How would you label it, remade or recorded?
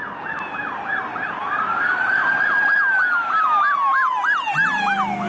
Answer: recorded